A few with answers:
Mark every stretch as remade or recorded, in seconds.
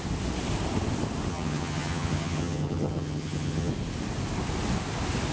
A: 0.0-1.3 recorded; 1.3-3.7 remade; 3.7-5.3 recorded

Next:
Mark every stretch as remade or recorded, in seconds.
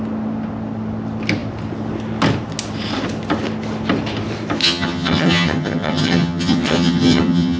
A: 0.0-4.6 recorded; 4.6-7.6 remade